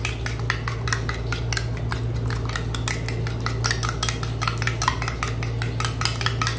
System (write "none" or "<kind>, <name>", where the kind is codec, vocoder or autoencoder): none